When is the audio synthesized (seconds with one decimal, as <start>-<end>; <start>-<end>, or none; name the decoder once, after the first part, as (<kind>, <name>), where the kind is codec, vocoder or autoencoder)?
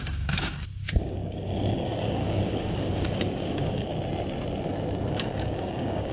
0.0-3.9 (codec, DAC); 5.1-6.1